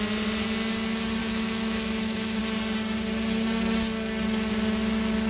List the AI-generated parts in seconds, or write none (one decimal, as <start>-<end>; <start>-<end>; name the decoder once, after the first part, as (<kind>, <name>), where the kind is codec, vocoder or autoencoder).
1.2-2.4 (autoencoder, DAC-VAE)